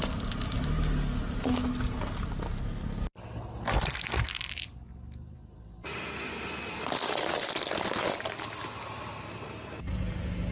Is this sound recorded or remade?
recorded